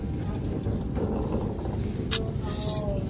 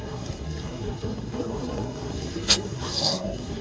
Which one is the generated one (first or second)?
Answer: second